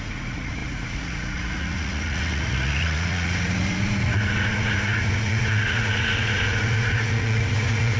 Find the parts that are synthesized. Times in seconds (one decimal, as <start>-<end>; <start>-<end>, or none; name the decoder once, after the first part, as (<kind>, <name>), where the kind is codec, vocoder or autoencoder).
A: 0.0-8.0 (vocoder, Vocos)